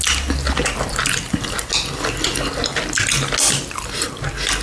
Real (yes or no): yes